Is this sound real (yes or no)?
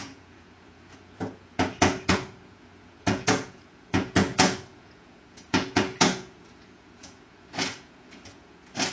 no